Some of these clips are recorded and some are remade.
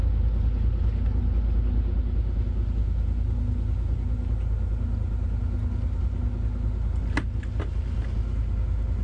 recorded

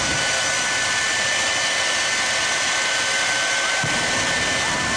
recorded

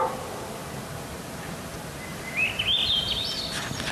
recorded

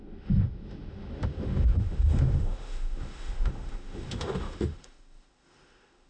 remade